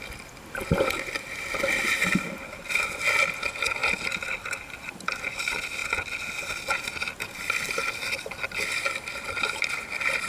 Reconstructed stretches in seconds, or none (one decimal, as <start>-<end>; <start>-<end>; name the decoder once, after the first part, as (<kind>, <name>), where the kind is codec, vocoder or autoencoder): none

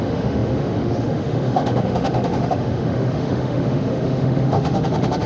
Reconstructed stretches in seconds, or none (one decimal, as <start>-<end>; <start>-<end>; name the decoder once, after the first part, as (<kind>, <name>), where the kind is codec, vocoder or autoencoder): 0.0-5.3 (autoencoder, DAC-VAE)

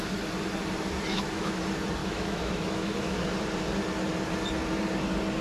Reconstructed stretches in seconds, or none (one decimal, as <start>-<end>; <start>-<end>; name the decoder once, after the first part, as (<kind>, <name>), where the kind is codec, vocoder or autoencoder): 1.1-1.6 (autoencoder, DAC-VAE); 2.0-3.2